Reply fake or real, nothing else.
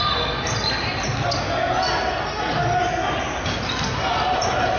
real